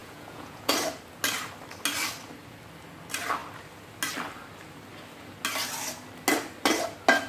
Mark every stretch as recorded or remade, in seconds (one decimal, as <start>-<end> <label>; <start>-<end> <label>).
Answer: 0.0-0.7 remade; 0.7-7.3 recorded